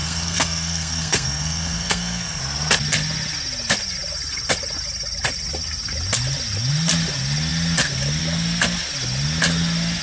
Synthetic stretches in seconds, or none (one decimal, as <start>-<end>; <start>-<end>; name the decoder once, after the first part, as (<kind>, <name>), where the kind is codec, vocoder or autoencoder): 0.0-2.4 (codec, SNAC)